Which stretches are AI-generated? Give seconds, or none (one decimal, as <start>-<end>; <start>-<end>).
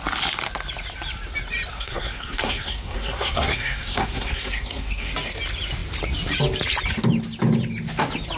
1.7-5.1